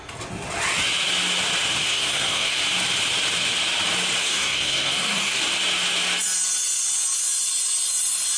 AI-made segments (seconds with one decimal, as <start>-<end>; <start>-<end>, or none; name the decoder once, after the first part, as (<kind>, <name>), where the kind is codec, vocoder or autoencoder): 1.7-2.6 (codec, SNAC); 4.2-5.4